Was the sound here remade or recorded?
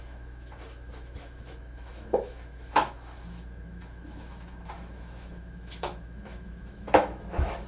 remade